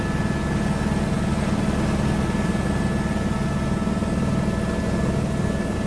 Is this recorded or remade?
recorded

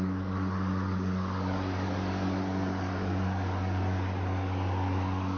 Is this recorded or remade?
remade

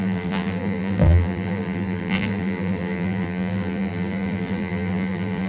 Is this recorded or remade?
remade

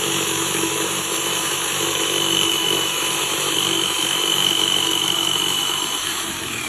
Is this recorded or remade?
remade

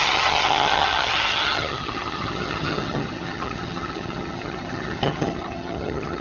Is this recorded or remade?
remade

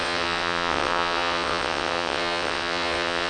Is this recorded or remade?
remade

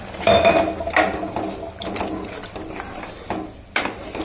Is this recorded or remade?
recorded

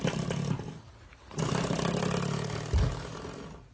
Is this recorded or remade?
recorded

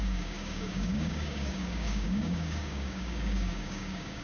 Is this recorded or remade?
remade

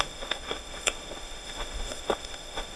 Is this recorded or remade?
remade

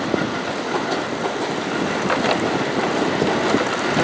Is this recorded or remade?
recorded